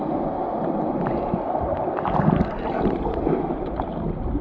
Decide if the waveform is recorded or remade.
recorded